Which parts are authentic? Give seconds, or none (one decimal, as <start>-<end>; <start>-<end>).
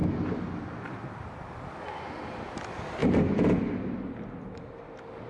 0.0-5.3